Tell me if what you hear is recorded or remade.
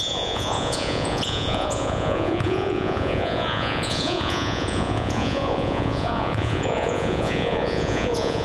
remade